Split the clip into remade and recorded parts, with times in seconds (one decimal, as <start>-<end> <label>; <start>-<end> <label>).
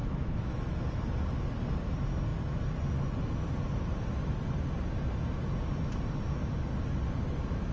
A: 0.0-0.8 remade; 0.8-7.7 recorded